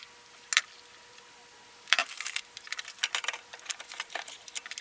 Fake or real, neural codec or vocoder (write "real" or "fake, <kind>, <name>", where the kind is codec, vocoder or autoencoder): real